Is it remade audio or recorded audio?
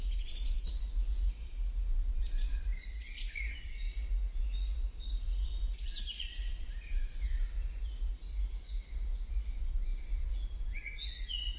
remade